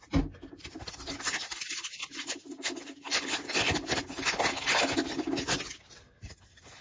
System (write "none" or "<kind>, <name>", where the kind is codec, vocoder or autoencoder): none